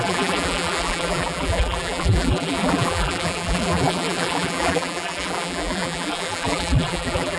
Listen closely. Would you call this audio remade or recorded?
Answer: remade